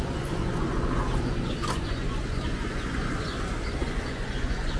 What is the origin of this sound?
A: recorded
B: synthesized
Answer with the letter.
B